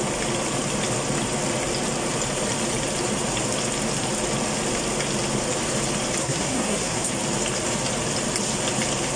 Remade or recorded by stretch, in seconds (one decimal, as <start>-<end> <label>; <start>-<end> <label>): 0.0-6.2 recorded; 6.2-7.1 remade; 7.1-9.2 recorded